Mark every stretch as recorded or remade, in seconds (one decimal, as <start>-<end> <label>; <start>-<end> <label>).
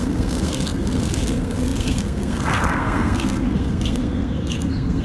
0.0-5.0 remade